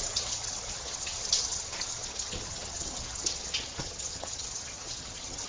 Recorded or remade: remade